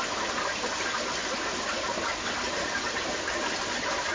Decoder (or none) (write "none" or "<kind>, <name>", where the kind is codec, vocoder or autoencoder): none